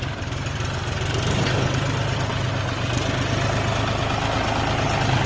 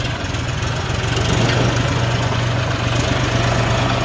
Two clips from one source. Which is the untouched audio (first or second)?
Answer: first